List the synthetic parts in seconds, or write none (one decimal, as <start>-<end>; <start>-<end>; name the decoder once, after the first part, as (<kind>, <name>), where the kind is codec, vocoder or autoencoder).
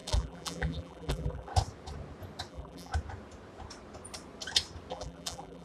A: 0.0-1.5 (vocoder, BigVGAN v2); 2.5-2.9; 4.9-5.6